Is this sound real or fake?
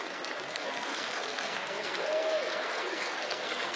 fake